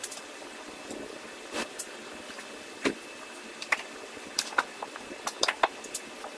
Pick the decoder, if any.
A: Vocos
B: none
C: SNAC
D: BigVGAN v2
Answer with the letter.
D